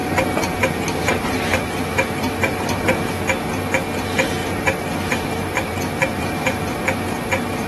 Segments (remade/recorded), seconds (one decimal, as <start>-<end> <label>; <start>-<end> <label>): 0.0-3.1 remade; 3.1-4.4 recorded; 4.4-6.6 remade; 6.6-7.7 recorded